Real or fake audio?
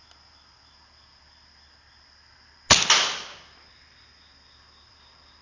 real